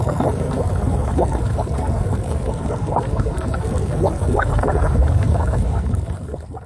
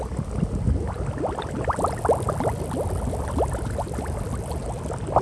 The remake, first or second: first